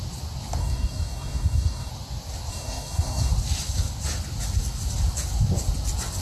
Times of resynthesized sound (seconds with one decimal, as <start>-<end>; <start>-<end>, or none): 0.6-1.9; 2.5-3.3